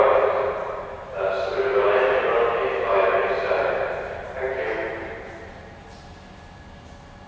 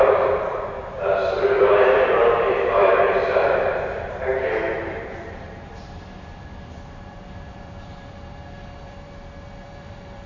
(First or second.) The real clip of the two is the first